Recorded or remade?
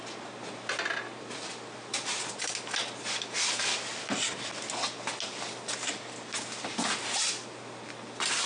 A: recorded